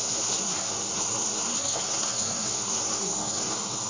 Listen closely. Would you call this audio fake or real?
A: fake